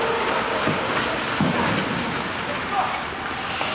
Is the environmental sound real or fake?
real